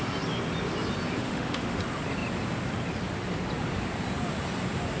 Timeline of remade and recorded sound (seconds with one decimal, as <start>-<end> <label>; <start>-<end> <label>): 0.0-1.2 recorded; 1.2-1.8 remade; 1.8-5.0 recorded